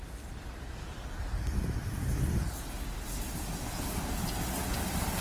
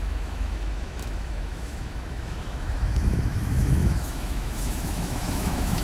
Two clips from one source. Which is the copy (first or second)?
second